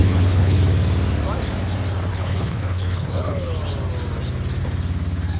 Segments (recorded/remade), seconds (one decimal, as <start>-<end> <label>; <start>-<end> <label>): 0.0-0.6 remade; 0.6-2.1 recorded; 2.1-3.5 remade; 3.5-5.4 recorded